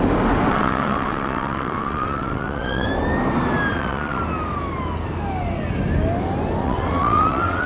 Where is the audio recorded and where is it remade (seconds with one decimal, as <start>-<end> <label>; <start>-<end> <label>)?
0.0-0.5 recorded; 0.5-2.9 remade; 2.9-3.7 recorded; 3.7-4.2 remade; 4.2-6.6 recorded; 6.6-7.7 remade